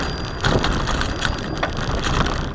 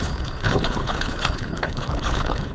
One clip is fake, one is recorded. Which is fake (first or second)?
second